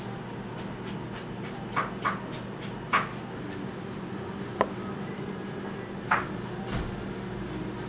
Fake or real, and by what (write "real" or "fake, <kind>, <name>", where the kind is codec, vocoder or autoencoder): real